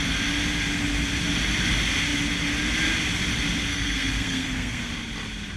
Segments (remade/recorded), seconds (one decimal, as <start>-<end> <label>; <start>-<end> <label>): 0.0-3.7 recorded; 3.7-4.9 remade; 4.9-5.6 recorded